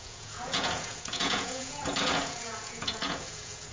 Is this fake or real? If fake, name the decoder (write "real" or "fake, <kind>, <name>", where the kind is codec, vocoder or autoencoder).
fake, vocoder, Vocos